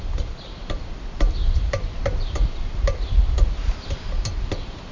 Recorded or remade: remade